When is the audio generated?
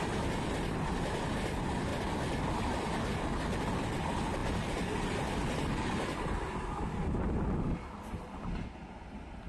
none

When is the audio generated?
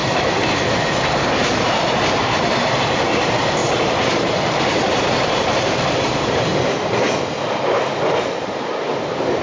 1.6-3.6 (vocoder, BigVGAN v2); 4.1-6.5; 8.2-9.4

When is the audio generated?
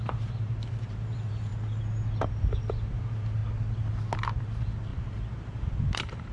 0.0-1.5 (vocoder, BigVGAN v2); 2.2-3.4; 4.4-6.3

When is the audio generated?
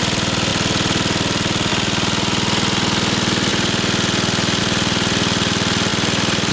0.5-1.7 (vocoder, BigVGAN v2); 5.9-6.5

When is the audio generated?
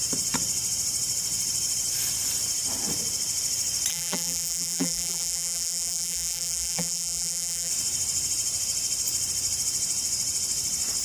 3.9-7.7 (vocoder, BigVGAN v2)